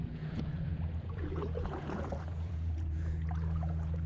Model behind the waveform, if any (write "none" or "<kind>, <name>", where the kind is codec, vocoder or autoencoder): vocoder, Vocos